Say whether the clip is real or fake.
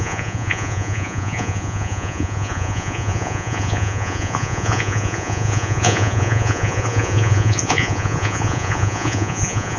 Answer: fake